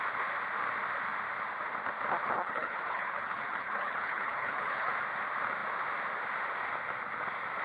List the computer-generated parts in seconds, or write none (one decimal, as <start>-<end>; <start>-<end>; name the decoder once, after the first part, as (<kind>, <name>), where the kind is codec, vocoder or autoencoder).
2.2-4.9 (codec, HILCodec)